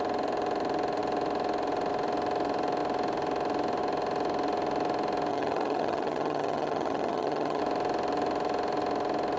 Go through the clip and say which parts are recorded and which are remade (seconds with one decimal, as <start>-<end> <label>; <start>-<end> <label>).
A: 0.0-5.3 recorded; 5.3-7.6 remade; 7.6-9.4 recorded

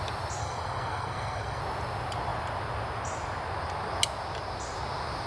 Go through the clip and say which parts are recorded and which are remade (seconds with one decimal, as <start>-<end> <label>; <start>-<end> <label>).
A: 0.0-0.4 recorded; 0.4-1.6 remade; 1.6-5.3 recorded

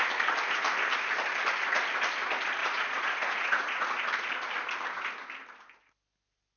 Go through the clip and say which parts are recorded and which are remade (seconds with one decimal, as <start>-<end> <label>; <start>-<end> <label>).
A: 0.0-2.6 recorded; 2.6-4.0 remade; 4.0-6.6 recorded

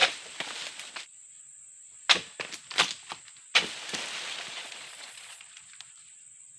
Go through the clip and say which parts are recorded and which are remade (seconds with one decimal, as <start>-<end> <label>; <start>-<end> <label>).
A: 0.0-4.5 recorded; 4.5-5.4 remade; 5.4-6.6 recorded

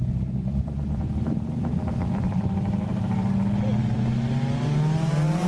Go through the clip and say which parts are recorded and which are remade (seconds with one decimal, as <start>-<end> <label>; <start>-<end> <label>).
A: 0.0-0.5 recorded; 0.5-3.8 remade; 3.8-5.5 recorded

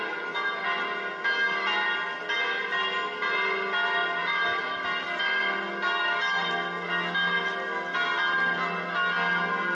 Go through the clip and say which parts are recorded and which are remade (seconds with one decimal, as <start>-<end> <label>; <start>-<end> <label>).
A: 0.0-9.7 recorded